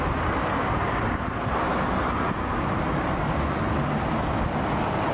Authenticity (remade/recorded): recorded